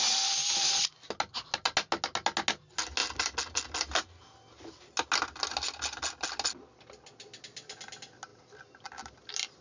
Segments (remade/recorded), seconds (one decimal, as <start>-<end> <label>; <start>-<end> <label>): 0.0-9.6 recorded